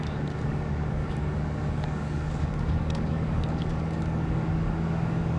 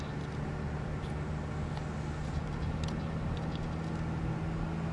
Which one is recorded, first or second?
second